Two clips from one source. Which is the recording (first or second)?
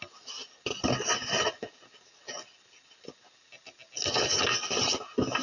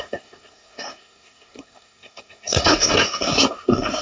first